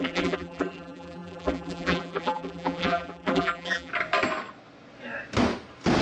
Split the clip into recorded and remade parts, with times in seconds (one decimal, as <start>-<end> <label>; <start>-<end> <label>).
0.0-3.9 remade; 3.9-6.0 recorded